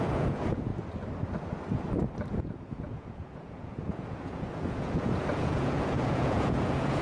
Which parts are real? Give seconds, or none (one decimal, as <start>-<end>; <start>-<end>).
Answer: 0.7-2.3